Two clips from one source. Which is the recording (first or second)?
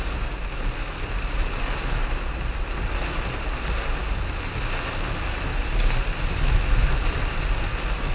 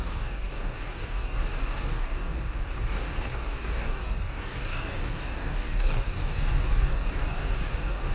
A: first